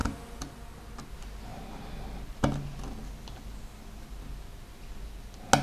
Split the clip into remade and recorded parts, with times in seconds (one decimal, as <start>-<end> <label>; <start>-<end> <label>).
0.0-5.6 recorded

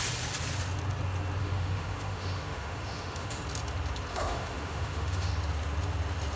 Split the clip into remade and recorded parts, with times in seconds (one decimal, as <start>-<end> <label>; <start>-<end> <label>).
0.0-1.4 recorded; 1.4-3.4 remade; 3.4-4.1 recorded; 4.1-5.3 remade; 5.3-6.4 recorded

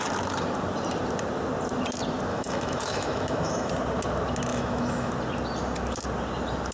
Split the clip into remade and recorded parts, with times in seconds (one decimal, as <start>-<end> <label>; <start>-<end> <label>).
0.0-2.3 recorded; 2.3-3.7 remade; 3.7-4.5 recorded; 4.5-5.1 remade; 5.1-6.7 recorded

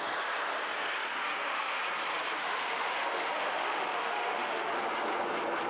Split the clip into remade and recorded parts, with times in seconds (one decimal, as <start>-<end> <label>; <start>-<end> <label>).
0.0-1.0 recorded; 1.0-1.8 remade; 1.8-2.4 recorded; 2.4-4.7 remade; 4.7-5.7 recorded

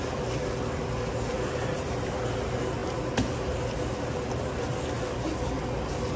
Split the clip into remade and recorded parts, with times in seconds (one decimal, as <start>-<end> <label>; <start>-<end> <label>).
0.0-6.2 recorded

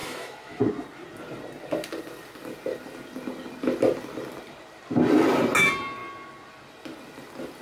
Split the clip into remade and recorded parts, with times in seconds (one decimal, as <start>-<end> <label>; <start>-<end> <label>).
0.0-0.6 remade; 0.6-7.6 recorded